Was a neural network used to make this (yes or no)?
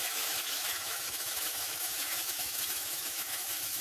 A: yes